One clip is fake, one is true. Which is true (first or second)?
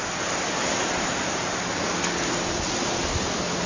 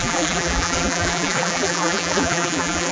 first